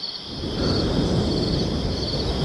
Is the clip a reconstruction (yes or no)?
yes